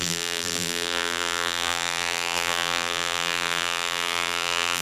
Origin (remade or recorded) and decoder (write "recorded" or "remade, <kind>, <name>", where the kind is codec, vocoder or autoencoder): remade, vocoder, BigVGAN v2